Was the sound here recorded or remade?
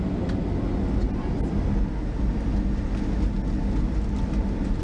recorded